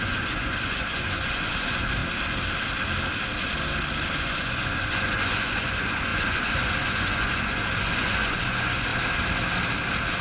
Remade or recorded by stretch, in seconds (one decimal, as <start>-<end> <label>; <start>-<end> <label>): 0.0-2.0 remade; 2.0-4.2 recorded; 4.2-8.9 remade; 8.9-10.2 recorded